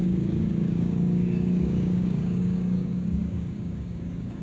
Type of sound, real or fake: fake